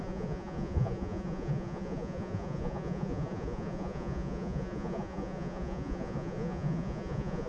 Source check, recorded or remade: remade